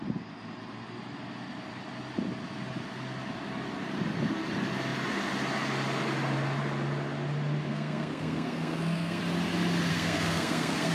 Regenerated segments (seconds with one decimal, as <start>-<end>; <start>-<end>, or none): 7.7-9.2; 9.9-10.9